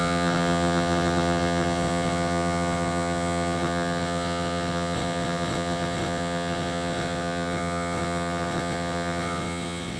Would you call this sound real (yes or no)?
no